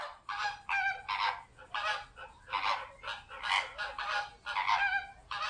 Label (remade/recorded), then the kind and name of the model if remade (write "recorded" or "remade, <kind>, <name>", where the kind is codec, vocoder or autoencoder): recorded